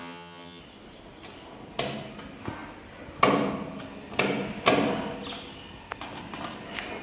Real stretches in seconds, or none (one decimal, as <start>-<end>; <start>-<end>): 0.6-7.0